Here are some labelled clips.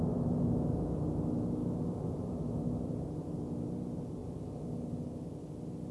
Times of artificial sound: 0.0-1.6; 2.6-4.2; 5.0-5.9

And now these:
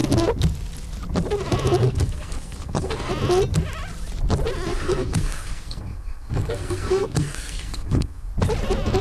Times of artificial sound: 1.8-3.1; 4.7-8.3